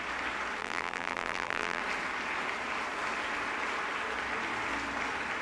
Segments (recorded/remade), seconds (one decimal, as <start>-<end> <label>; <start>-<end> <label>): 0.0-0.6 recorded; 0.6-1.8 remade; 1.8-5.4 recorded